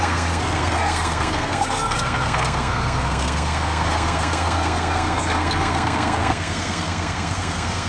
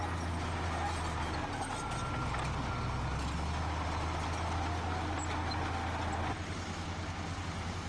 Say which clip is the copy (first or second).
first